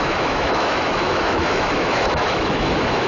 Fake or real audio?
fake